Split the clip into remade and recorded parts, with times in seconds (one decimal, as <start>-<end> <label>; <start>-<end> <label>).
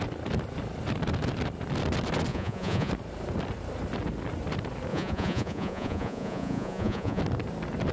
0.0-2.3 recorded; 2.3-2.9 remade; 2.9-4.9 recorded; 4.9-7.2 remade; 7.2-7.9 recorded